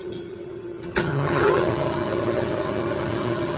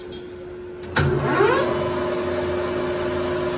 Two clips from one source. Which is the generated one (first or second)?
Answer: first